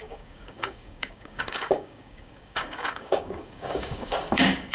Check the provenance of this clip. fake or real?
fake